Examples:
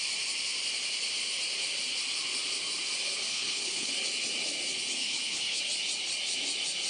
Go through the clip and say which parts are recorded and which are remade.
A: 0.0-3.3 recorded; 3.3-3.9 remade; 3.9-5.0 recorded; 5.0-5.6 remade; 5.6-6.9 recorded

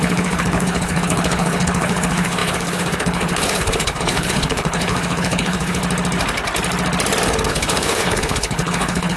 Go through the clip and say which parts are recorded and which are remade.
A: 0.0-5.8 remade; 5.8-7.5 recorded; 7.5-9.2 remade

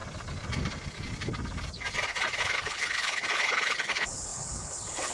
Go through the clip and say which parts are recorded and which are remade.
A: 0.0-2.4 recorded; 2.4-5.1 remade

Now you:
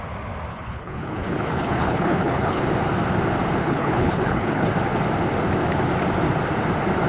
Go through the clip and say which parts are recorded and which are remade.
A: 0.0-0.5 recorded; 0.5-2.6 remade; 2.6-3.6 recorded; 3.6-4.7 remade; 4.7-7.1 recorded